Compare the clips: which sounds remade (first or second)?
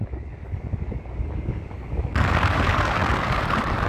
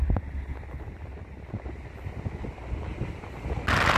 first